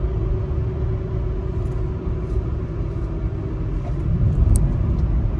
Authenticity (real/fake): real